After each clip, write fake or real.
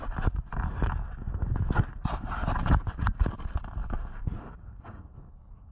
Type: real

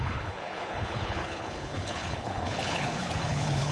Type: fake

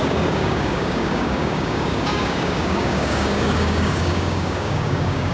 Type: fake